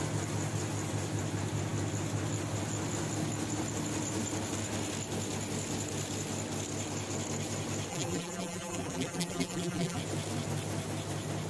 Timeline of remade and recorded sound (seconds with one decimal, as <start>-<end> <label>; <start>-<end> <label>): 0.0-7.9 recorded; 7.9-10.0 remade; 10.0-11.5 recorded